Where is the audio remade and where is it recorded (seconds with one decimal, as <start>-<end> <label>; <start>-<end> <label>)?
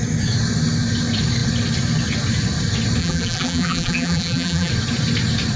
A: 0.0-3.0 recorded; 3.0-4.7 remade; 4.7-5.6 recorded